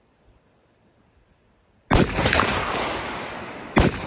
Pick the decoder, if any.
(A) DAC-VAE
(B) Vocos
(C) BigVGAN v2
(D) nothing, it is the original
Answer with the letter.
D